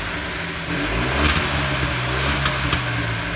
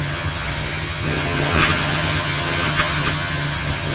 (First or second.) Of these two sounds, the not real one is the second